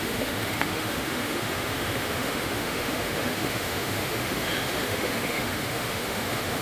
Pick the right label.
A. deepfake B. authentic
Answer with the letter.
A